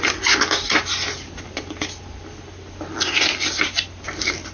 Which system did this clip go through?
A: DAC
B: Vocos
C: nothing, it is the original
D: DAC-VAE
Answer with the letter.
C